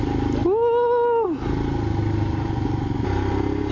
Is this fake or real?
real